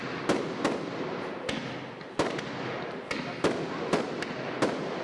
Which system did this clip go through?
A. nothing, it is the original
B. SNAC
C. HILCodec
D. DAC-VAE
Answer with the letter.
A